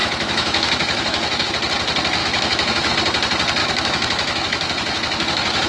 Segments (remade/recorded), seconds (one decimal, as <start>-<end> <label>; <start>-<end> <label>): 0.0-1.5 remade; 1.5-2.2 recorded; 2.2-2.9 remade; 2.9-3.6 recorded; 3.6-5.7 remade